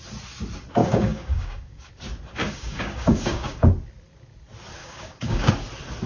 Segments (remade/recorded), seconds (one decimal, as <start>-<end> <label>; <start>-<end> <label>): 0.0-0.8 recorded; 0.8-1.9 remade; 1.9-2.4 recorded; 2.4-3.7 remade; 3.7-4.8 recorded; 4.8-5.5 remade; 5.5-6.1 recorded